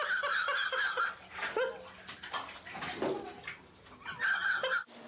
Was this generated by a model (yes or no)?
no